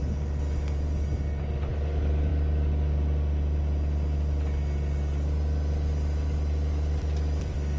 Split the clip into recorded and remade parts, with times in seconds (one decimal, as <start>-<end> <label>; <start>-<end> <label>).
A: 0.0-1.4 recorded; 1.4-2.3 remade; 2.3-7.0 recorded; 7.0-7.8 remade